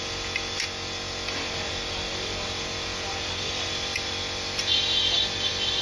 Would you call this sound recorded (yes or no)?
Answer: yes